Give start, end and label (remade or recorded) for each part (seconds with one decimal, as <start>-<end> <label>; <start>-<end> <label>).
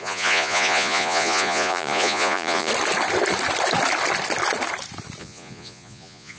0.0-2.7 remade; 2.7-5.2 recorded; 5.2-6.4 remade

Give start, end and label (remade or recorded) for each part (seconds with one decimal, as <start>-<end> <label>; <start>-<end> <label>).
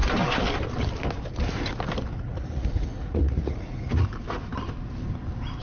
0.0-2.2 recorded; 2.2-4.1 remade; 4.1-5.6 recorded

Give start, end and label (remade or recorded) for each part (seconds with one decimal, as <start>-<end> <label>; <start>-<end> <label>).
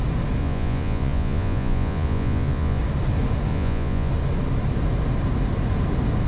0.0-0.4 recorded; 0.4-2.8 remade; 2.8-3.5 recorded; 3.5-4.1 remade; 4.1-6.3 recorded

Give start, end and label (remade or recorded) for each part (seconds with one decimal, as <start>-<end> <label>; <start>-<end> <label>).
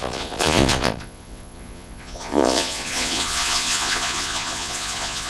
0.0-5.3 remade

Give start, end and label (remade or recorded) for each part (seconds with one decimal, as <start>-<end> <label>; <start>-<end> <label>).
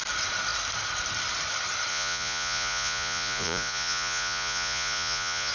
0.0-1.9 recorded; 1.9-5.5 remade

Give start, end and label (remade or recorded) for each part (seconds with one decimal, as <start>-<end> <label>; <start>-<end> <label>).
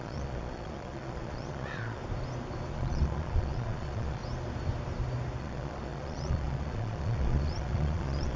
0.0-2.0 remade; 2.0-2.7 recorded; 2.7-4.2 remade; 4.2-5.4 recorded; 5.4-8.4 remade